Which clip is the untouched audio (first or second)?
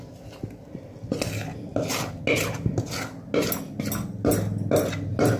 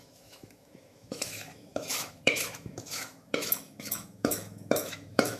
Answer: first